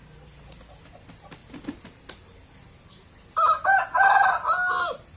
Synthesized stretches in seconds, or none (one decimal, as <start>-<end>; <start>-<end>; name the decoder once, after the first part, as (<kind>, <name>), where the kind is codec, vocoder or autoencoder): none